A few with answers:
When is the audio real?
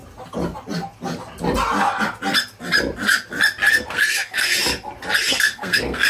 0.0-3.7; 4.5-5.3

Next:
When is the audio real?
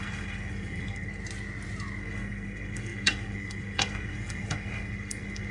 1.2-2.0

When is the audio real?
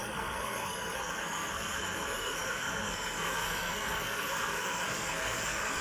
none